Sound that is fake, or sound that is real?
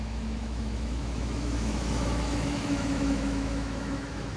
fake